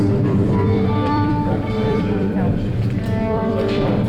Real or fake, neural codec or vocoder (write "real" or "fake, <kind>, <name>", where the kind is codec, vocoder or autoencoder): fake, vocoder, BigVGAN v2